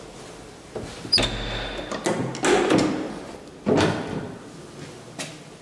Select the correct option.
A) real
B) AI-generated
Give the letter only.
A